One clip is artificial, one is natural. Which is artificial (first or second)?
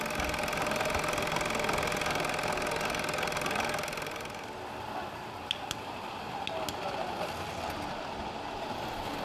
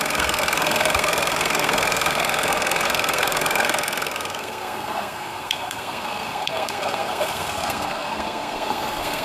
second